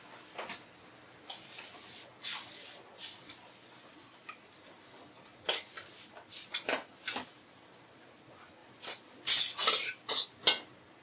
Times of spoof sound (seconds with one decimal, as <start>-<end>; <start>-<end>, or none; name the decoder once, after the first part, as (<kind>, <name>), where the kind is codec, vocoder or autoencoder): 8.6-10.1 (vocoder, BigVGAN v2)